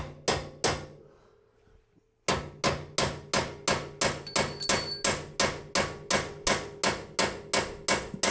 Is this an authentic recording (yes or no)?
yes